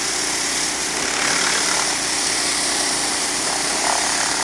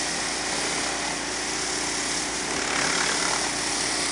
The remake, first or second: first